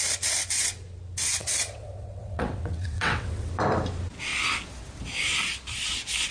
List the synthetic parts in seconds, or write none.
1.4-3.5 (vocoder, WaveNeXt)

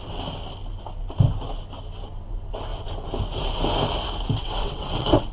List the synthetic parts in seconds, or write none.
4.4-5.3 (vocoder, WaveNeXt)

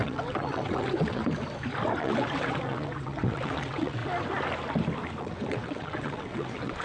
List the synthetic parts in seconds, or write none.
0.0-1.2 (vocoder, WaveNeXt); 2.0-4.0; 5.2-6.8

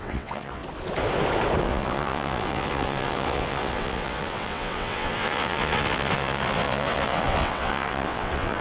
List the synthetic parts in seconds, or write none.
0.0-0.6 (vocoder, WaveNeXt); 1.6-8.6

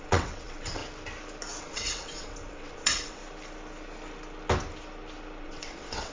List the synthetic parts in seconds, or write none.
0.0-0.8 (vocoder, WaveNeXt); 1.6-3.2; 5.4-6.1

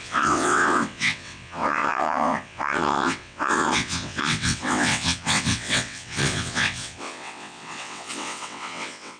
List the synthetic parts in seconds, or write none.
0.0-9.2 (vocoder, WaveNeXt)